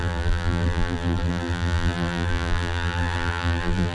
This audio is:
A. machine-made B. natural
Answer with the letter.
A